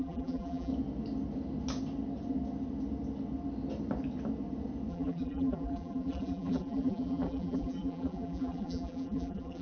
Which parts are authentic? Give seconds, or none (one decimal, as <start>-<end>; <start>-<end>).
0.7-4.9